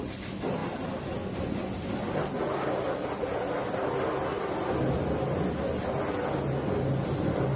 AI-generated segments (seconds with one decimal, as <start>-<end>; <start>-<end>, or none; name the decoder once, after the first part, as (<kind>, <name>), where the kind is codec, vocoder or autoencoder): none